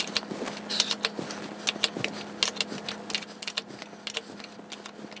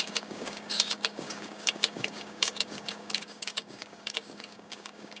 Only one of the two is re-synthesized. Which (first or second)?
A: second